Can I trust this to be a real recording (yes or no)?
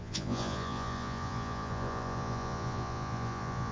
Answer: no